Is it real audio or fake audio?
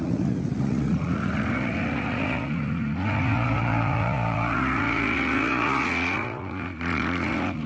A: fake